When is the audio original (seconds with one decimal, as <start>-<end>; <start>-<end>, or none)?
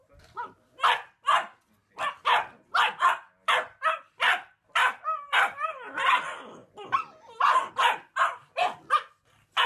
0.0-9.7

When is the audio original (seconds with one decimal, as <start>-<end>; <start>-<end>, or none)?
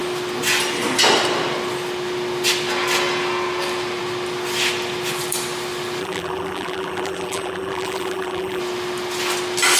0.0-6.0; 8.6-9.8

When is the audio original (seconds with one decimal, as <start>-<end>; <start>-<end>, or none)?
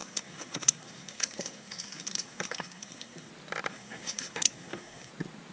3.3-3.7; 5.1-5.5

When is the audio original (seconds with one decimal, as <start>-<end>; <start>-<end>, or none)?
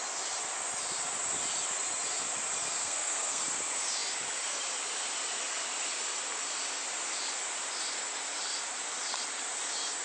0.0-2.8; 3.4-10.0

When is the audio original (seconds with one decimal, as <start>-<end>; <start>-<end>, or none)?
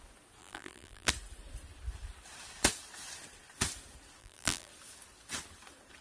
0.0-0.4; 1.1-4.2; 4.7-6.0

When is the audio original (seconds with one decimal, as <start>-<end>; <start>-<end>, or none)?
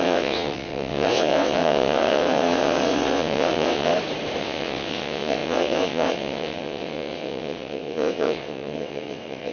3.9-4.4